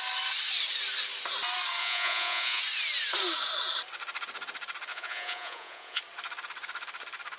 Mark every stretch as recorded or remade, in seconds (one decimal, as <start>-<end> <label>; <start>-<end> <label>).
0.0-1.8 recorded; 1.8-2.6 remade; 2.6-4.9 recorded; 4.9-6.0 remade; 6.0-7.4 recorded